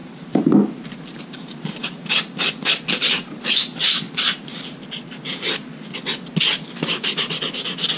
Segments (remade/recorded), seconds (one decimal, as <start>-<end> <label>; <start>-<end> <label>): 0.0-4.8 remade; 4.8-8.0 recorded